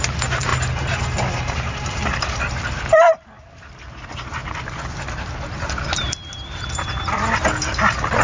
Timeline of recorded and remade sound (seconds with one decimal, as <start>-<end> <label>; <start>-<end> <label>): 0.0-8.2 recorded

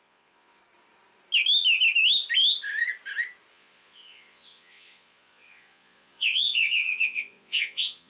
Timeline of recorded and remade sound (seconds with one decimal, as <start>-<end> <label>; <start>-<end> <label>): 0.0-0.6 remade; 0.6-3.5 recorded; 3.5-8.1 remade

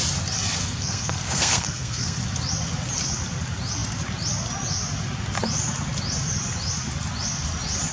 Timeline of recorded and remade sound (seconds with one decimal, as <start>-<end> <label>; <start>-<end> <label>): 0.0-0.6 recorded; 0.6-2.2 remade; 2.2-7.9 recorded